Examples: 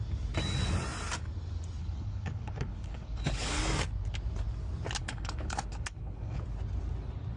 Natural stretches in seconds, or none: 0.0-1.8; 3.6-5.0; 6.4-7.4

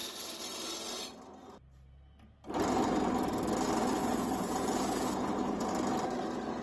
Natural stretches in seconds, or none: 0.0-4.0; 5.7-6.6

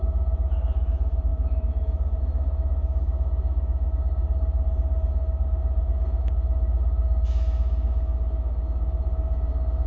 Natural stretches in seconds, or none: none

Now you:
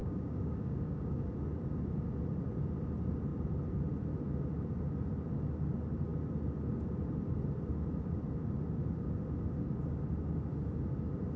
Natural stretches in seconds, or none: 1.3-11.4

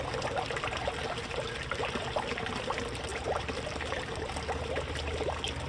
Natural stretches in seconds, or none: 0.0-5.7